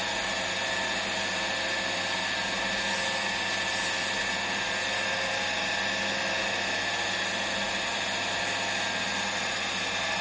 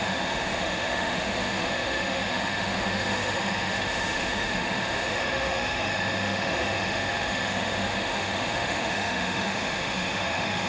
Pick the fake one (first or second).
second